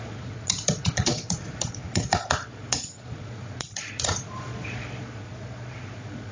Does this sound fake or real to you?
fake